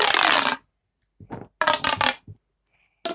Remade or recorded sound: recorded